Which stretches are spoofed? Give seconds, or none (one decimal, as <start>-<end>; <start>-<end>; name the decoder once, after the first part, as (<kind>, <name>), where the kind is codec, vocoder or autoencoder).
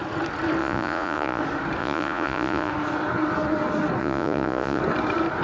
0.6-1.4 (vocoder, Vocos); 1.8-2.7; 4.0-4.8